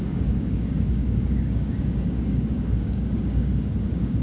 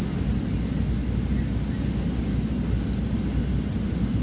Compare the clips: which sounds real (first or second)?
second